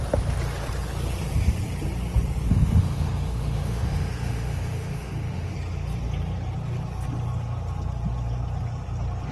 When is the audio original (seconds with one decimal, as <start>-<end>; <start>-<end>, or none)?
0.0-2.5; 5.5-9.3